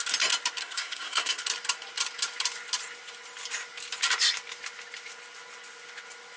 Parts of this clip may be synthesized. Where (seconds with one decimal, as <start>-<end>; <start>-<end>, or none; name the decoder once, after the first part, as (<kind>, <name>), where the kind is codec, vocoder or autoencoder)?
0.6-1.4 (codec, SNAC)